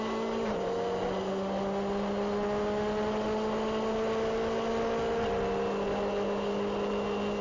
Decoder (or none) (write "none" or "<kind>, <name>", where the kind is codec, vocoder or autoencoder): none